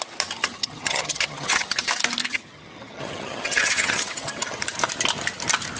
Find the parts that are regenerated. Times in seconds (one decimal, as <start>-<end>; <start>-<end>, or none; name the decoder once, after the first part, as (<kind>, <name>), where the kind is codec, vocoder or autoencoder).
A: 0.4-1.9 (vocoder, HiFi-GAN); 2.3-4.6